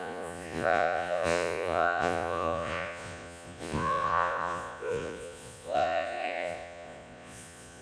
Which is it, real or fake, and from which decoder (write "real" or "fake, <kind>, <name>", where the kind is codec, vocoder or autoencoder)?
fake, vocoder, Vocos